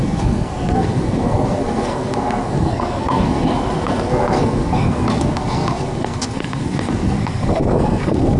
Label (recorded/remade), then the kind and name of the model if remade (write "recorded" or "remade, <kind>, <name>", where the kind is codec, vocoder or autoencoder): remade, codec, SNAC